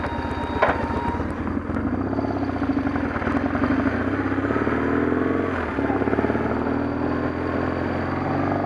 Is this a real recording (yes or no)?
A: yes